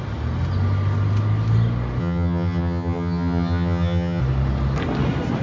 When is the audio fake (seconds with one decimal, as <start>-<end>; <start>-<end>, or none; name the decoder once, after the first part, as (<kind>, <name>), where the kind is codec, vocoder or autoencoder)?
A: 2.0-4.2 (vocoder, HiFi-GAN)